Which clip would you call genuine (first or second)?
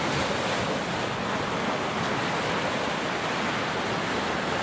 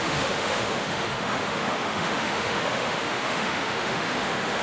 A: first